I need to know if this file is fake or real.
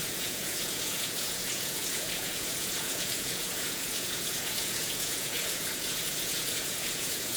fake